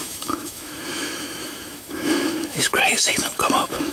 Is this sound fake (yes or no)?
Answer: yes